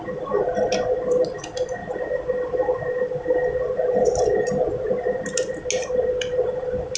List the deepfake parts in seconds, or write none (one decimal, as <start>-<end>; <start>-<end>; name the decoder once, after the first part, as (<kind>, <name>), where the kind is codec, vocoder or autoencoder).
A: none